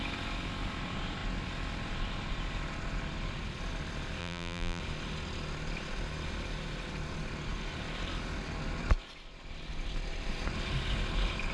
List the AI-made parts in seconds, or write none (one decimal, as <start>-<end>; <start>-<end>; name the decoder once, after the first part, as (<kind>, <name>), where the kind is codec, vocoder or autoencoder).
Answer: 4.2-4.8 (vocoder, BigVGAN v2)